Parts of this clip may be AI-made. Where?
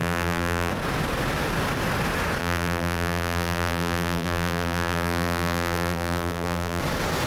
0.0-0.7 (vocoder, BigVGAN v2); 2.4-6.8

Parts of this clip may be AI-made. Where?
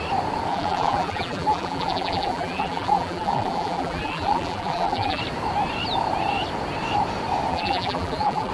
0.5-5.2 (vocoder, BigVGAN v2); 7.5-8.5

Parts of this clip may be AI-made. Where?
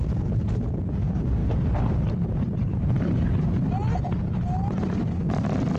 none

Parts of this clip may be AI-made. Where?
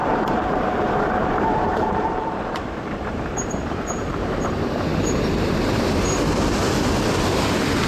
0.0-4.5 (vocoder, BigVGAN v2); 4.9-6.0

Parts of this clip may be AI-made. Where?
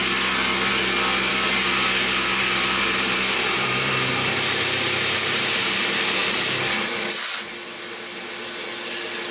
1.3-5.5 (vocoder, BigVGAN v2)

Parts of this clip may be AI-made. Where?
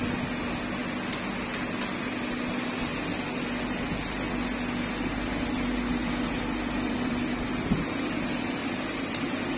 6.0-7.7 (vocoder, BigVGAN v2); 8.6-9.2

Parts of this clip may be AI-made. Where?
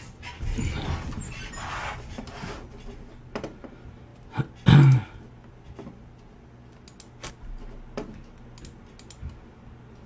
none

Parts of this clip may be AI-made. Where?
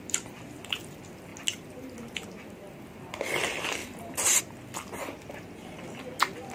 3.8-4.4 (vocoder, BigVGAN v2)